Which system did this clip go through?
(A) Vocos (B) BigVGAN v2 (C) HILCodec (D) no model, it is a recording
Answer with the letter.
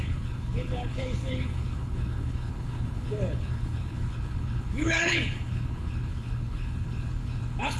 C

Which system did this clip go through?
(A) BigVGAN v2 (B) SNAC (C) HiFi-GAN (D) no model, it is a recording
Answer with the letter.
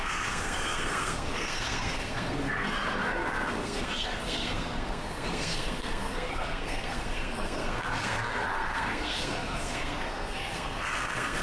B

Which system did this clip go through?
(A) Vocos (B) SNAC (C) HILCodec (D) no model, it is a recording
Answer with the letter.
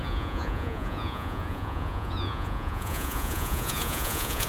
A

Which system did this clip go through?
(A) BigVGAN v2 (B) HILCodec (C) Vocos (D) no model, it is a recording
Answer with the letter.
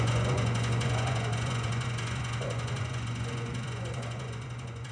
C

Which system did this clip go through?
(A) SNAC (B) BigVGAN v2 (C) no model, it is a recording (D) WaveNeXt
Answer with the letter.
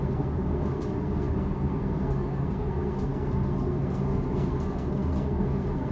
A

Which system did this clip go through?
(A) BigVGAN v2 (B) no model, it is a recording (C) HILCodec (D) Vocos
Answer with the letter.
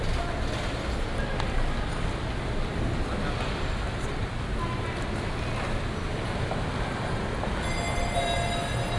B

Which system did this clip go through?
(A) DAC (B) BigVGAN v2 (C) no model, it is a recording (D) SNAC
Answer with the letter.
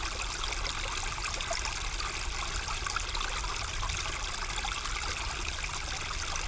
C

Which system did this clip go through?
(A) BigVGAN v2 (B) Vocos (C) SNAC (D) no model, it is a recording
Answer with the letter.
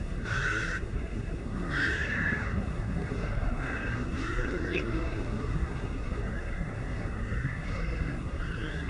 C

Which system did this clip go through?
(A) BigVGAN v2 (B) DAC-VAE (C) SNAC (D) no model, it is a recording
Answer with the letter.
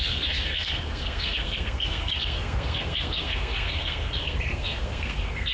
C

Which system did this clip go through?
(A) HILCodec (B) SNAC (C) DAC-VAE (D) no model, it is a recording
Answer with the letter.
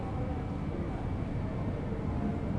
D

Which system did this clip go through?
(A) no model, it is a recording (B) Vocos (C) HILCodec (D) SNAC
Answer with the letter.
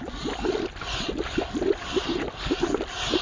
A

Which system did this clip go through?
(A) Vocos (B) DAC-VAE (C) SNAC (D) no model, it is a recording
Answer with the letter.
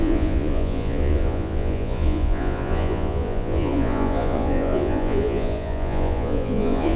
A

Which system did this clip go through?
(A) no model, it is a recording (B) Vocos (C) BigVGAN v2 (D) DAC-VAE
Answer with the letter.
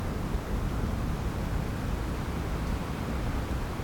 C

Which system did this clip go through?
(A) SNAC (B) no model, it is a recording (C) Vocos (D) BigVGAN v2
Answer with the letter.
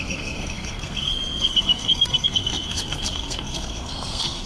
A